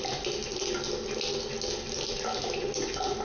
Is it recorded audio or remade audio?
recorded